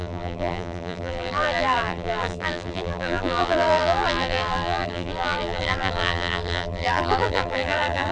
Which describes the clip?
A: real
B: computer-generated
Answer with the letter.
B